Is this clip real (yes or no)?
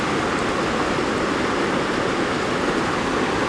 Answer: yes